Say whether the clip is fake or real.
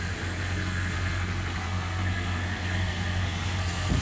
fake